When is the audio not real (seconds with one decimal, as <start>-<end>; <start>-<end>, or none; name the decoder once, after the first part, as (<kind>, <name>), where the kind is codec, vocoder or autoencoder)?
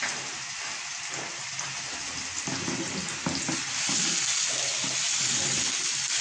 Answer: none